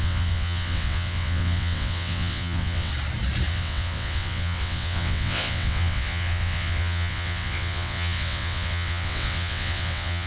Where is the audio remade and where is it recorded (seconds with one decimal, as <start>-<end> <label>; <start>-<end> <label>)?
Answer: 0.0-2.9 remade; 2.9-3.5 recorded; 3.5-10.3 remade